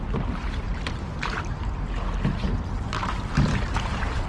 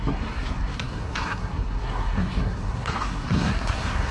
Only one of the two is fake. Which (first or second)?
second